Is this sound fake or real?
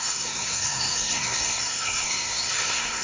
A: fake